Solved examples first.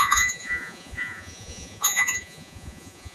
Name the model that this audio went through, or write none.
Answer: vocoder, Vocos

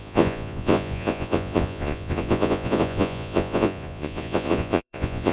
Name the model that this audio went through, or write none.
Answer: vocoder, Vocos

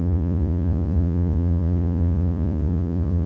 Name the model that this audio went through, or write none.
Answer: vocoder, Vocos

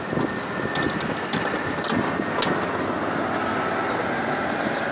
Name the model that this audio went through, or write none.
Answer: none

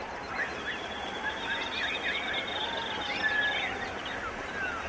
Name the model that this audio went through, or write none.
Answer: none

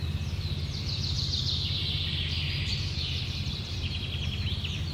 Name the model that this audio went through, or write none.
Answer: none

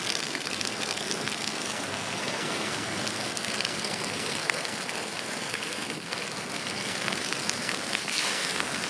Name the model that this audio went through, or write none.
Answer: codec, SNAC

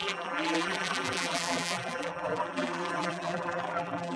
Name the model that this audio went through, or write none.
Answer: vocoder, BigVGAN v2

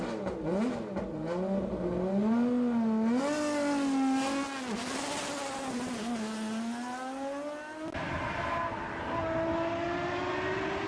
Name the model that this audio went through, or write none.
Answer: none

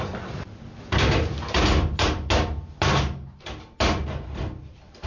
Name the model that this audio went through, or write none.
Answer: none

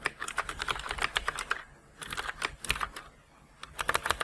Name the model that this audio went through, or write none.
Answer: vocoder, BigVGAN v2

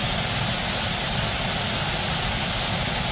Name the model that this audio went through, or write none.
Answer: none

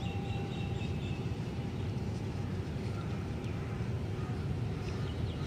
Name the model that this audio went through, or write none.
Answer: vocoder, BigVGAN v2